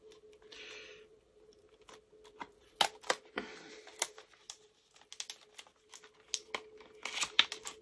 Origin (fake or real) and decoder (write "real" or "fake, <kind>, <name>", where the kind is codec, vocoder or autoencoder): real